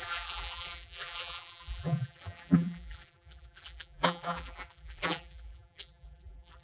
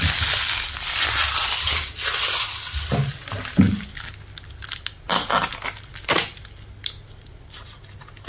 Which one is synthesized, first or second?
first